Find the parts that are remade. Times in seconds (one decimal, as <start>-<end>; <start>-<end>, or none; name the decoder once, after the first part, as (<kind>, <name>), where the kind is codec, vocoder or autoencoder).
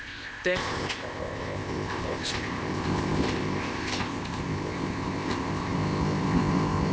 0.0-6.9 (codec, ZipCodec)